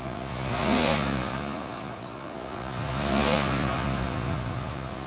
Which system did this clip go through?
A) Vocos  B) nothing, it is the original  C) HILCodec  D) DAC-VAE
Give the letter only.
A